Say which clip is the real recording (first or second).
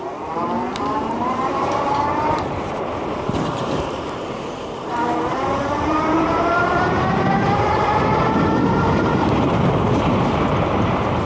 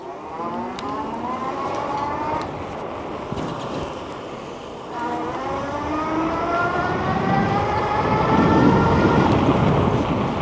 second